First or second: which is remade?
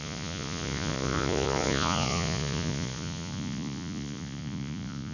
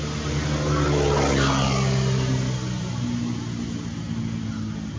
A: first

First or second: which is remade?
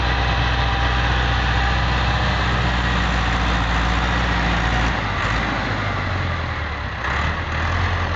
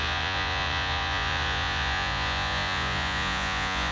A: second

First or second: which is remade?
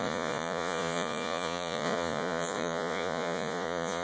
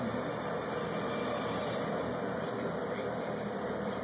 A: first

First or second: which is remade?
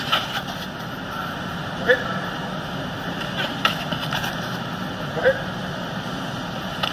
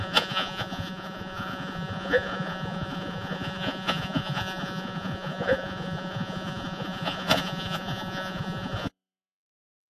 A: second